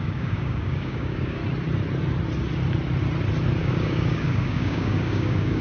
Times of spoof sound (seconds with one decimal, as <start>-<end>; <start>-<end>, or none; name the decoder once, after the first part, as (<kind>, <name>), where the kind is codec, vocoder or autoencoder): 0.0-1.4 (codec, DAC); 3.6-5.6